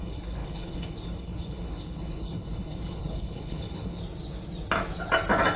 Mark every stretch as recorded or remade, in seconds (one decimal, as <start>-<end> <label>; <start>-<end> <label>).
0.0-4.0 remade; 4.0-5.6 recorded